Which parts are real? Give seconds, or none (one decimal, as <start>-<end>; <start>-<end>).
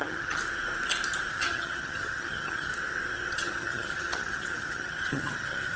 0.4-1.3; 2.7-3.3